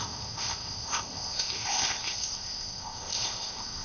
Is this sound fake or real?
fake